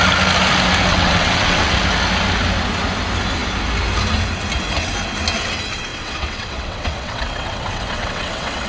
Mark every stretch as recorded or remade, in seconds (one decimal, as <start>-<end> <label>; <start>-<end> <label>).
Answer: 0.0-0.9 recorded; 0.9-1.8 remade; 1.8-5.9 recorded; 5.9-8.7 remade